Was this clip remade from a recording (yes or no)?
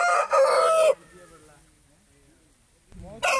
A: no